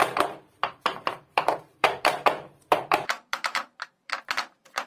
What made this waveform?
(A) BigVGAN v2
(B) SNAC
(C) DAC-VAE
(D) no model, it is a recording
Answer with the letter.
A